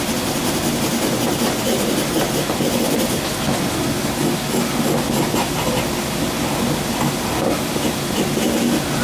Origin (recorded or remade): recorded